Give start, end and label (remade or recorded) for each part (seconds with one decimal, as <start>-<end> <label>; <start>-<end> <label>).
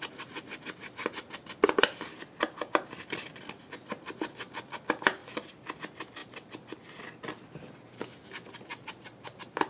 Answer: 0.0-5.2 recorded; 5.2-5.8 remade; 5.8-8.7 recorded; 8.7-9.7 remade